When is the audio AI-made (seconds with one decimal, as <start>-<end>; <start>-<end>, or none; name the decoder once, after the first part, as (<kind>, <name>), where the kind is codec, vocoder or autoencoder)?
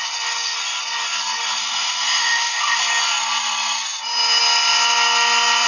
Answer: 1.6-2.8 (autoencoder, DAC-VAE)